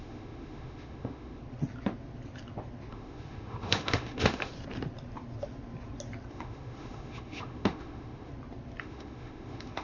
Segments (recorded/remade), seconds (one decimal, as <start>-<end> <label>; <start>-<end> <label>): 0.0-1.4 remade; 1.4-2.9 recorded; 2.9-4.5 remade; 4.5-6.3 recorded; 6.3-8.3 remade; 8.3-8.8 recorded; 8.8-9.8 remade